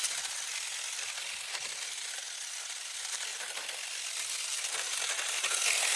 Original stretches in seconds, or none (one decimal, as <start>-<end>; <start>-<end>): 0.0-6.0